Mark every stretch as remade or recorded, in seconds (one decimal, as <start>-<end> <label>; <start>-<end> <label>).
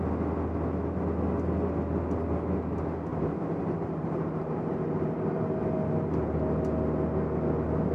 0.0-3.1 recorded; 3.1-5.4 remade; 5.4-7.9 recorded